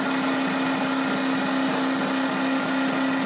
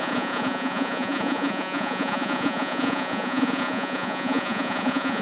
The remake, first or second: second